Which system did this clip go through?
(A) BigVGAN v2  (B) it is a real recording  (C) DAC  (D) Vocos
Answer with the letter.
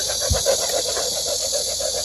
B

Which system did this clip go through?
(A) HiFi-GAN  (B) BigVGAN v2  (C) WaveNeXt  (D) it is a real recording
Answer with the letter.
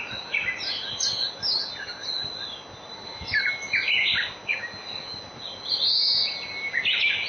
D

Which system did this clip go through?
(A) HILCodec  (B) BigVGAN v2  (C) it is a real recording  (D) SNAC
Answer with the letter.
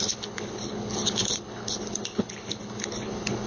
A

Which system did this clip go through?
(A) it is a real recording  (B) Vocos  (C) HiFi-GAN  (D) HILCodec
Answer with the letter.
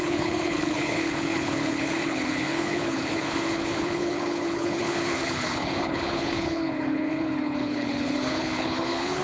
D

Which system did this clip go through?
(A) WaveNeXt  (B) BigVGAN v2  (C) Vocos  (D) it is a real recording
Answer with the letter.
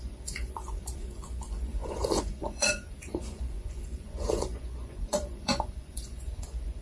C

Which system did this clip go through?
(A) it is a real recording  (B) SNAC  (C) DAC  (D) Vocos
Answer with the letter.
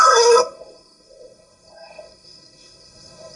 B